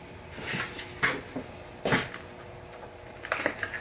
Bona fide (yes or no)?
yes